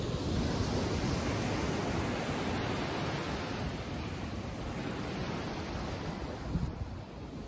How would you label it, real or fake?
real